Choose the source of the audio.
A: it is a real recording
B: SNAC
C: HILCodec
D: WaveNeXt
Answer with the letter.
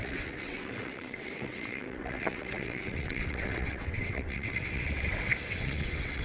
D